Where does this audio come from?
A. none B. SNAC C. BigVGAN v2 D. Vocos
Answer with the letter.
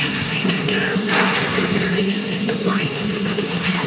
B